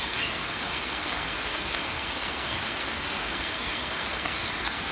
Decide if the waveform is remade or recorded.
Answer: remade